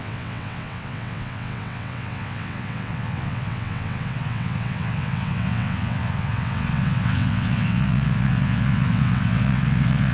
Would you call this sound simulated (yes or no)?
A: yes